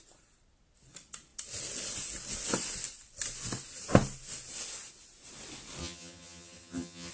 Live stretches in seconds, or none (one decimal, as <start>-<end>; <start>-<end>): 0.0-5.8

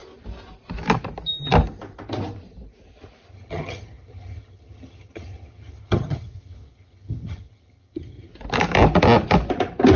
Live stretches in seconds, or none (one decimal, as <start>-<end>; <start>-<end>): 0.0-3.3; 8.3-10.0

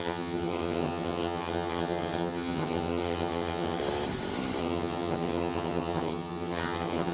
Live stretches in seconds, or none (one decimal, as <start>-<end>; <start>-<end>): 3.8-4.6

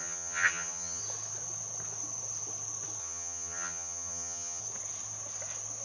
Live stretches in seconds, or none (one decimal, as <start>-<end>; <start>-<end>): 1.0-3.0; 4.6-5.8

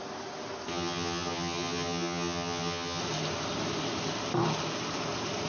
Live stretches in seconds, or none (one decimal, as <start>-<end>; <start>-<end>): 0.0-0.7; 3.0-5.5

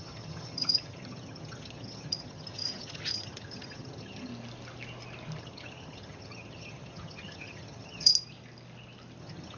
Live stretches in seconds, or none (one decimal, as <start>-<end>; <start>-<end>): 4.3-5.4; 8.1-9.2